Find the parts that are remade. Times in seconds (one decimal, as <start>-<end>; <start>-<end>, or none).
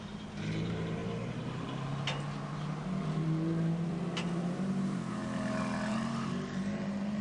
0.0-1.0; 4.8-5.2; 5.9-7.2